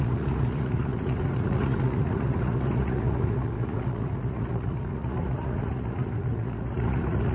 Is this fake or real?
fake